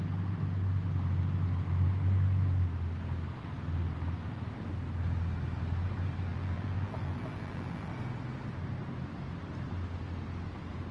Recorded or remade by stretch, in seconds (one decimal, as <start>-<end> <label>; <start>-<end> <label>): 0.0-6.3 recorded; 6.3-7.9 remade; 7.9-10.9 recorded